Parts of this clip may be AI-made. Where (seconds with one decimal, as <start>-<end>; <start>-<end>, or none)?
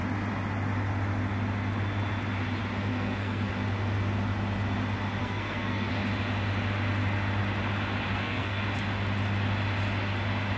2.9-3.5; 5.2-5.9; 8.1-8.6